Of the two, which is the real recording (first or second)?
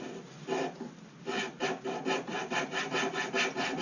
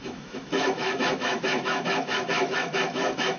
first